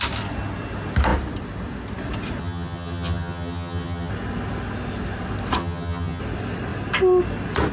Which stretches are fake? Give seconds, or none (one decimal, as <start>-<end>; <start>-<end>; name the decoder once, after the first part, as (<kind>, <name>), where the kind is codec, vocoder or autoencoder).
2.4-4.1 (vocoder, HiFi-GAN); 5.6-6.2